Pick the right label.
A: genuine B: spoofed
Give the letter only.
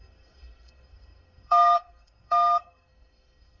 B